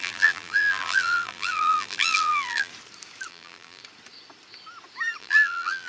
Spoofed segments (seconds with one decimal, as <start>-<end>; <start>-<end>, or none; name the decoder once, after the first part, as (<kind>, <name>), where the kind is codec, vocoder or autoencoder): 0.0-2.7 (vocoder, BigVGAN v2); 3.3-3.8; 5.2-5.9